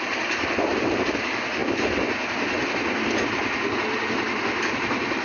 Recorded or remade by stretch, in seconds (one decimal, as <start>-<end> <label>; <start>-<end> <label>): 0.0-1.6 remade; 1.6-4.7 recorded; 4.7-5.2 remade